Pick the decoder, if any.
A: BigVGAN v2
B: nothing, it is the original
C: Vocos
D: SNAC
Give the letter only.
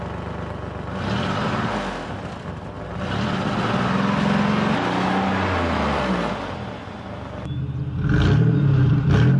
B